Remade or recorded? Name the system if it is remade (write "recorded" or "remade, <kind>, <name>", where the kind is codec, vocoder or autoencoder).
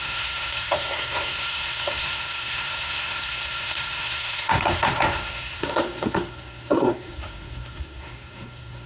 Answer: remade, codec, SNAC